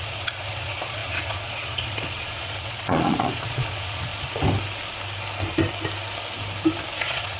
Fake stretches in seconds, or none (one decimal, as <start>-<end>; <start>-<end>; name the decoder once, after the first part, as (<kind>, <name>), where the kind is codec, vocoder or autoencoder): 0.0-4.1 (vocoder, Vocos); 7.0-7.4